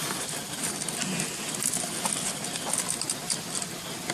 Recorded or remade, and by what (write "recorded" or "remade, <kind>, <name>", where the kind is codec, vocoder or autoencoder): recorded